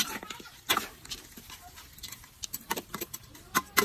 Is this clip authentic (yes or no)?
no